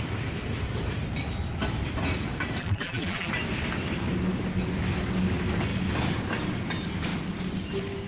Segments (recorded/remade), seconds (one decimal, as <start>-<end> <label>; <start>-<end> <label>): 0.0-2.6 recorded; 2.6-3.3 remade; 3.3-8.1 recorded